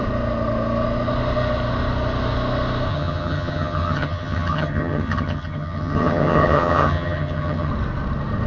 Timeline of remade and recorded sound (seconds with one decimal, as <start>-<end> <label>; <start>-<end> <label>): 0.0-2.9 recorded; 2.9-7.7 remade; 7.7-8.5 recorded